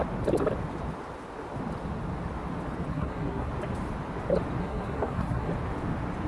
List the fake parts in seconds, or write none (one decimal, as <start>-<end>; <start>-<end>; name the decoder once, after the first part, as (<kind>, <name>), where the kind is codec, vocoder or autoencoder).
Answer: 2.9-3.5 (codec, SNAC); 4.6-5.5